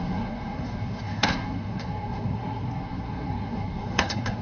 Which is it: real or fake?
fake